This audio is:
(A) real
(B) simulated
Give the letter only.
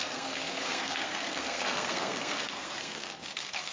B